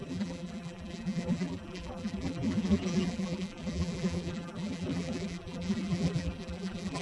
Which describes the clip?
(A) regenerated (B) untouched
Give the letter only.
A